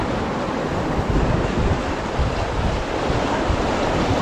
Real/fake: real